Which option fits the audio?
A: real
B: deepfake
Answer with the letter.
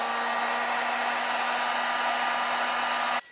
A